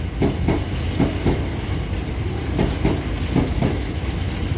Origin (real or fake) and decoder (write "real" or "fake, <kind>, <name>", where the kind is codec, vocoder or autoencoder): real